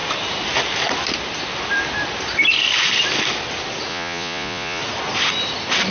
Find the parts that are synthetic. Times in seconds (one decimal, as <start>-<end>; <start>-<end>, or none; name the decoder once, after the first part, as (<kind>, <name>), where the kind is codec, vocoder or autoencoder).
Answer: 3.9-4.8 (vocoder, Vocos)